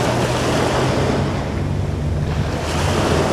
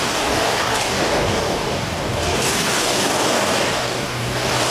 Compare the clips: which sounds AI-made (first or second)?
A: second